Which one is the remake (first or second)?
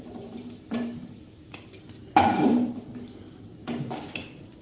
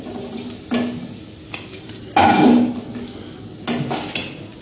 first